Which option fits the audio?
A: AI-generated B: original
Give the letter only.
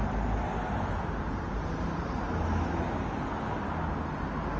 B